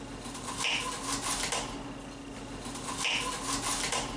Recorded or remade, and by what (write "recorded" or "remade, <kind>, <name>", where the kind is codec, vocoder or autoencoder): recorded